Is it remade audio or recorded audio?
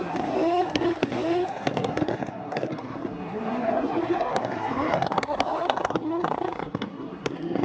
remade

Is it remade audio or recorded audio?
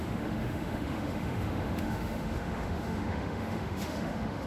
remade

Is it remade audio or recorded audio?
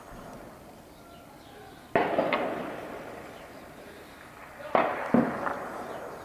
recorded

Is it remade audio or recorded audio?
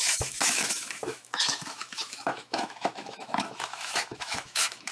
remade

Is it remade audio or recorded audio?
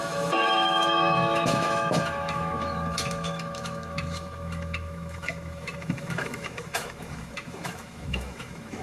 remade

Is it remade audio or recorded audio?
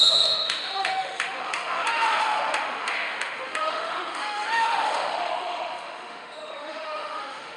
remade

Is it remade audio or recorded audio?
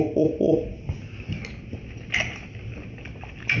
recorded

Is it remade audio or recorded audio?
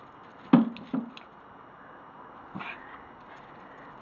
recorded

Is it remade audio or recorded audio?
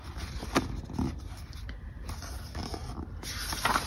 recorded